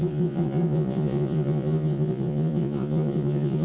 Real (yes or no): no